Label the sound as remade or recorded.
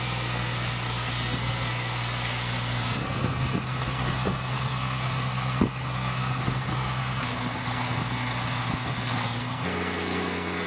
remade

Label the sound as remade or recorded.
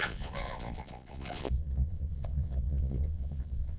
remade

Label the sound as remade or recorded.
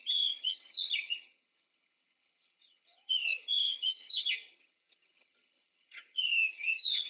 remade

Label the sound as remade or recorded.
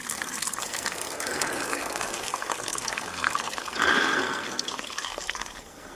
remade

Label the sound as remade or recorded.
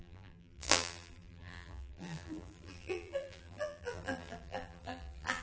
remade